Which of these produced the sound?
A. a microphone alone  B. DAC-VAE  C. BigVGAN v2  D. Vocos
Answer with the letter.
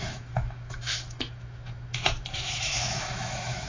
B